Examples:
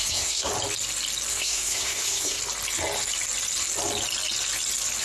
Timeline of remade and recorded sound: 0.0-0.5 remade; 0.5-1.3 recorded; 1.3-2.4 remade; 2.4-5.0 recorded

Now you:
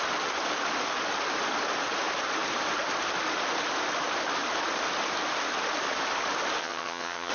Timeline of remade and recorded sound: 0.0-6.6 recorded; 6.6-7.3 remade

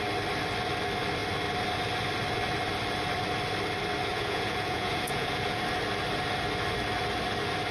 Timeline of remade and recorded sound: 0.0-4.1 recorded; 4.1-5.6 remade; 5.6-7.7 recorded

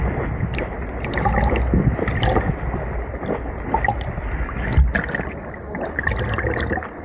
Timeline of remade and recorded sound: 0.0-7.0 recorded

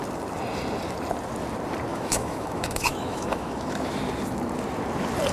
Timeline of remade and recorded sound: 0.0-1.9 recorded; 1.9-4.0 remade; 4.0-5.3 recorded

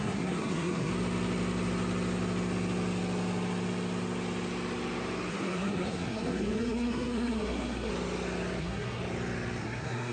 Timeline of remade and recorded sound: 0.0-0.9 remade; 0.9-5.3 recorded; 5.3-7.9 remade; 7.9-8.6 recorded; 8.6-9.0 remade; 9.0-9.6 recorded; 9.6-10.1 remade

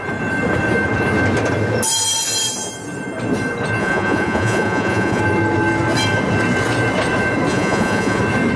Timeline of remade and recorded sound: 0.0-3.8 recorded; 3.8-5.2 remade; 5.2-7.5 recorded; 7.5-8.2 remade; 8.2-8.6 recorded

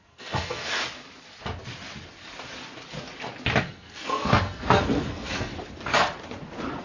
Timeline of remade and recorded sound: 0.0-0.8 remade; 0.8-3.6 recorded; 3.6-5.5 remade; 5.5-6.8 recorded